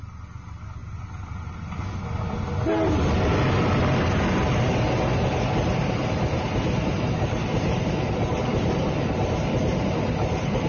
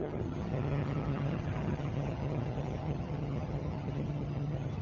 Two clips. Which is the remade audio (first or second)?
second